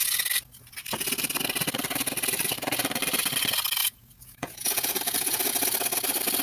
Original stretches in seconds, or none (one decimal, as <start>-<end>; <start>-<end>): 0.0-3.8; 5.5-6.4